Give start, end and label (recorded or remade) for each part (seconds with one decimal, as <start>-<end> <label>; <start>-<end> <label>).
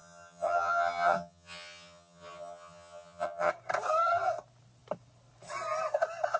0.0-3.5 remade; 3.5-6.4 recorded